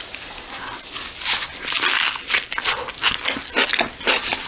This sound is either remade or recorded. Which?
recorded